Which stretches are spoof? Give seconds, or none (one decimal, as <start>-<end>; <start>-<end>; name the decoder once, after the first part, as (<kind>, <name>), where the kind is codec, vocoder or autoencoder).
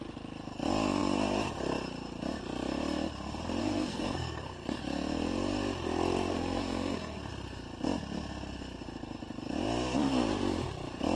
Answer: 3.6-4.8 (codec, SNAC); 6.3-7.3